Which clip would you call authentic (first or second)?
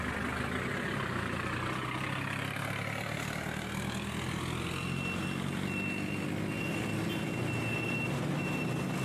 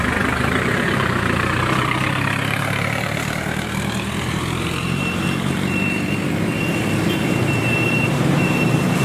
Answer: first